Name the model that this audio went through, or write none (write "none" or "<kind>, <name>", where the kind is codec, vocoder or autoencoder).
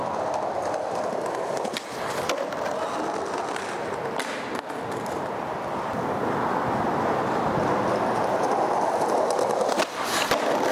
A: none